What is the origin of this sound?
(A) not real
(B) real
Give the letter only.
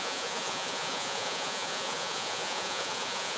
A